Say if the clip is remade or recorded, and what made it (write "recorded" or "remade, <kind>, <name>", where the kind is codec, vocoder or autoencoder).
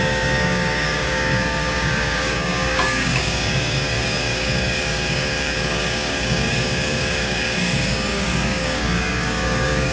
remade, codec, DAC